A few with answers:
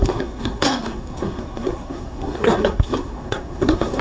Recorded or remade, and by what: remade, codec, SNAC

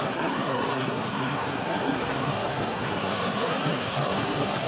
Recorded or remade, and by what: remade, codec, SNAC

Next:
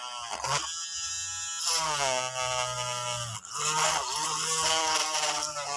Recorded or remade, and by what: recorded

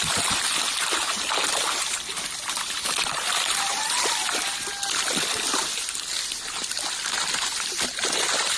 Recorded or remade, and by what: recorded